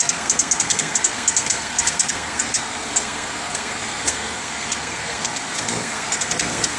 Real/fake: fake